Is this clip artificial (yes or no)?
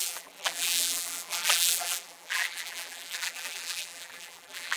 yes